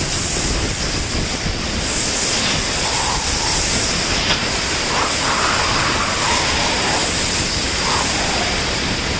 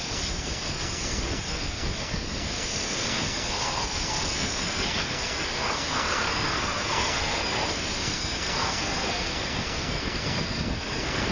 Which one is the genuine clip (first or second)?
first